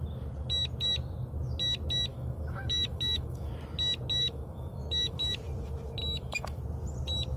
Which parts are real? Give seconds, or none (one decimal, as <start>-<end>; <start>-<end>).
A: 0.0-2.1; 3.5-4.2; 5.2-6.0; 6.6-7.4